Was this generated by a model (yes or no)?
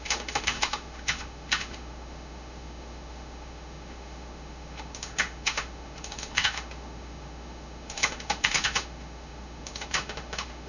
yes